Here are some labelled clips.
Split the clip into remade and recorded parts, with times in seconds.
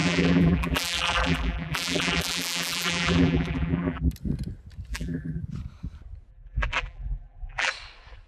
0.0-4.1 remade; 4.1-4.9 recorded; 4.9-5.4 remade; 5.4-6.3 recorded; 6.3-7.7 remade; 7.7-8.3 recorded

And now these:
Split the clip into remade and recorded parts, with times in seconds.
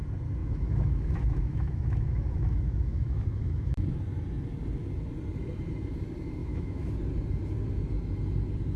0.0-0.4 recorded; 0.4-3.8 remade; 3.8-6.4 recorded; 6.4-6.9 remade; 6.9-8.8 recorded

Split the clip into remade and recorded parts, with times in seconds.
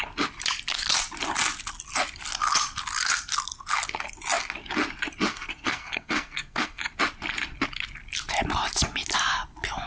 0.0-5.3 recorded; 5.3-6.8 remade; 6.8-9.9 recorded